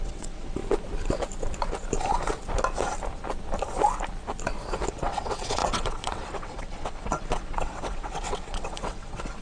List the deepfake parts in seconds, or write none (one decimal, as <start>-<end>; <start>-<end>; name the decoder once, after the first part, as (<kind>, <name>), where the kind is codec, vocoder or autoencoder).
0.0-0.6 (vocoder, WaveNeXt); 4.9-9.4